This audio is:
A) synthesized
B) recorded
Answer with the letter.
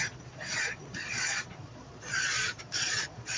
A